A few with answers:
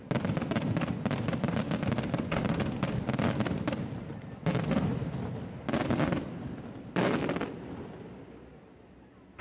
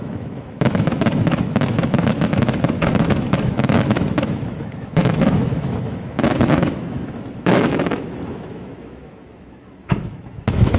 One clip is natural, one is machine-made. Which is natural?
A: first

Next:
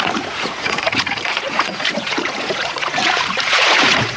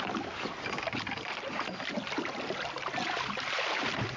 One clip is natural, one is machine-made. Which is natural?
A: second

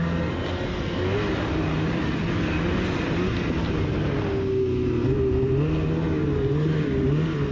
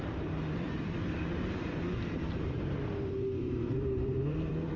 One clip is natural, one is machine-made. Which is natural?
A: first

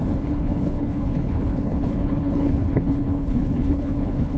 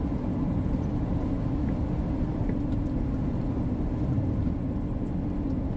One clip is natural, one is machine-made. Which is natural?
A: second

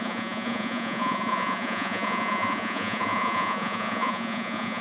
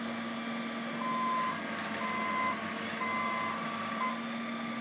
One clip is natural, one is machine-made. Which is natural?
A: second